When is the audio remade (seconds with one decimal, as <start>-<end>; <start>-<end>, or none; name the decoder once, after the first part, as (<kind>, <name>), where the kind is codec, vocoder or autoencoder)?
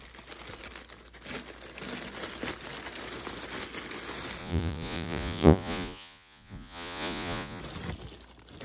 4.4-7.6 (vocoder, Vocos)